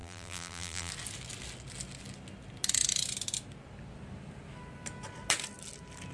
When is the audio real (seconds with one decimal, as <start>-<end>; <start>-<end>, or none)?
0.9-6.1